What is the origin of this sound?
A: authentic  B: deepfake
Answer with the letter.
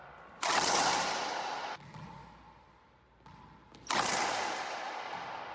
A